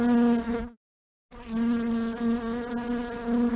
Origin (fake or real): real